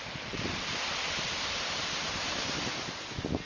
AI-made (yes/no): no